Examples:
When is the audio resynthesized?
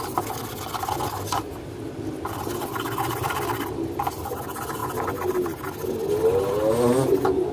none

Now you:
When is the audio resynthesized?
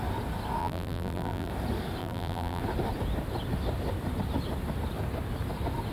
0.6-1.5 (vocoder, BigVGAN v2); 2.0-2.6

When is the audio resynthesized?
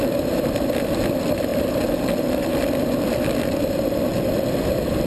0.0-1.5 (vocoder, BigVGAN v2); 2.1-5.1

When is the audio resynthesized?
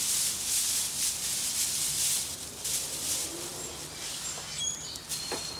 none